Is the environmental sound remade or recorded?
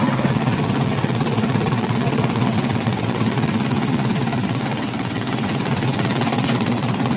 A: remade